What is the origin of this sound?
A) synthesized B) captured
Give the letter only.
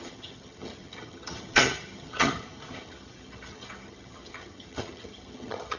A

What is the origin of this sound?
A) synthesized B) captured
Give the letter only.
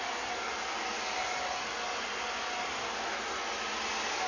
B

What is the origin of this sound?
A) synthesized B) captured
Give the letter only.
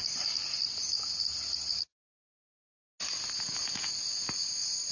B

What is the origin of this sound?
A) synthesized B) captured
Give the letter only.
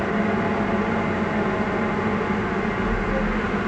B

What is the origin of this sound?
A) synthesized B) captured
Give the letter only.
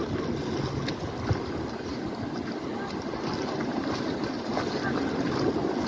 B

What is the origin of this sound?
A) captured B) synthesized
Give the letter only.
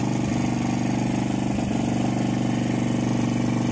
A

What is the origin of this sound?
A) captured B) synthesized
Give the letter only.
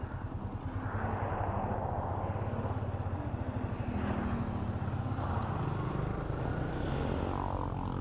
A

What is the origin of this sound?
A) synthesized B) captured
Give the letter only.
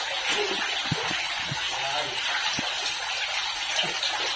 B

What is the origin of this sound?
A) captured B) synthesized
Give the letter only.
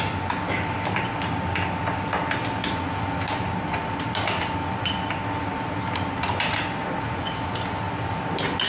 A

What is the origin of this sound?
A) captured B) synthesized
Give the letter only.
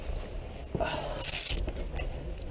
A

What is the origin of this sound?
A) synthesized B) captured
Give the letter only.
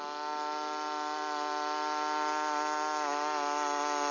B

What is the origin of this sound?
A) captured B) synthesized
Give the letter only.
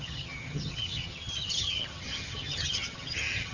B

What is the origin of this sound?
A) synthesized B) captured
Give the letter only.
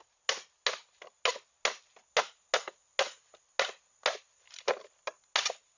B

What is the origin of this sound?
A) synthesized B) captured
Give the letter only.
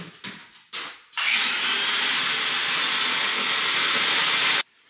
B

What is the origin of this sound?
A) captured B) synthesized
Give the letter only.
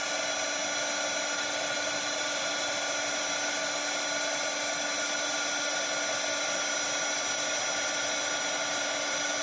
A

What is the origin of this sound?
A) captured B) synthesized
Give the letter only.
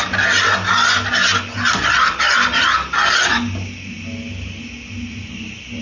A